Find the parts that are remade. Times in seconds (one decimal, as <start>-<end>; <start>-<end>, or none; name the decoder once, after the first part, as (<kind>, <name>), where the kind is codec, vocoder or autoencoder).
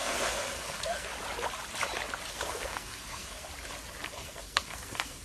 0.0-1.1 (codec, SNAC); 2.3-3.5; 4.1-5.2